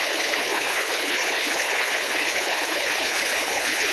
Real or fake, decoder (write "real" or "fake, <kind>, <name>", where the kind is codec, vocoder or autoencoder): fake, codec, HILCodec